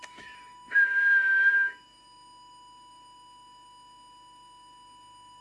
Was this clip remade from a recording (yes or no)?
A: yes